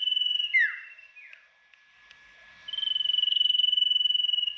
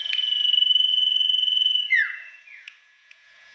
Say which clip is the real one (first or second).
first